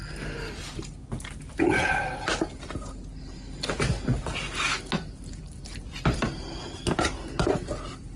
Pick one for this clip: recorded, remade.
recorded